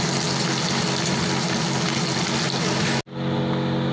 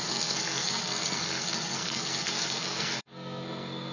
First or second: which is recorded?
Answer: first